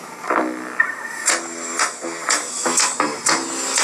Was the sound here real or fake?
real